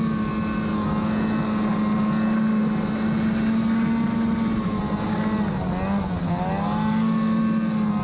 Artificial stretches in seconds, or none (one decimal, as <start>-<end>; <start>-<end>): none